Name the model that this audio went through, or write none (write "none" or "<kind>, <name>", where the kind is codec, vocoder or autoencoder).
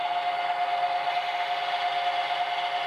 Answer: none